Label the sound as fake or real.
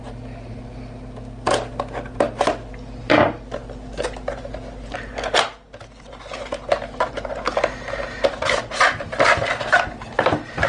real